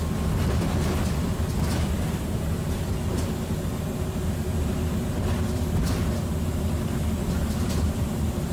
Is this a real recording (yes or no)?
yes